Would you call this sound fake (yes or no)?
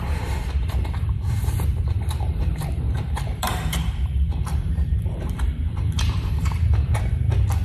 yes